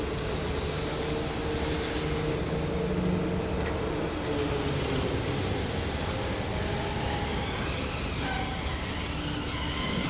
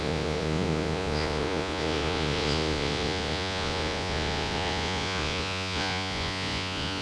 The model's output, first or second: second